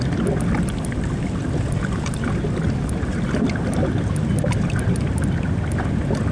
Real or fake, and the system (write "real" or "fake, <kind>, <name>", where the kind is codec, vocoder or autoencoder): real